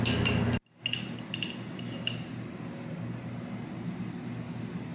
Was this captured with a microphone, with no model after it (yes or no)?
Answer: yes